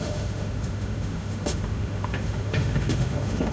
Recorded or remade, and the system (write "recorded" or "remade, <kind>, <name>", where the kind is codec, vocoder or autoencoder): remade, autoencoder, DAC-VAE